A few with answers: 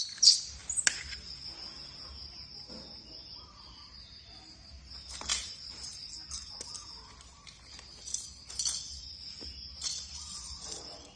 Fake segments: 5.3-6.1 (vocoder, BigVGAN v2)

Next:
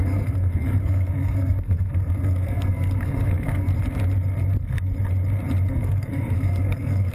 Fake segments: 0.0-3.7 (codec, SNAC); 5.7-7.1

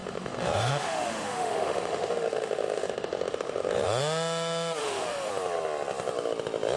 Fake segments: 0.0-4.0 (autoencoder, DAC-VAE); 4.8-5.3

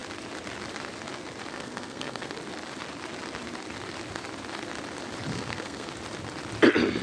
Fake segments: 1.5-2.3 (codec, SNAC); 5.3-5.9

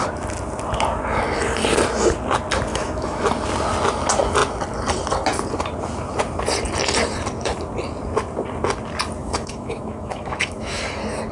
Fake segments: 2.7-3.2 (autoencoder, DAC-VAE); 9.2-10.8